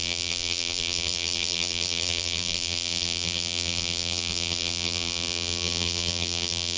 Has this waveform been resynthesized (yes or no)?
yes